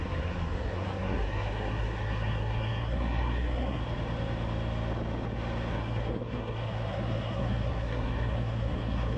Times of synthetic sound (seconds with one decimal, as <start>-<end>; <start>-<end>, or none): 0.0-3.8; 5.7-9.2